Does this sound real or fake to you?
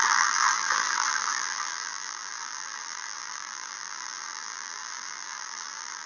fake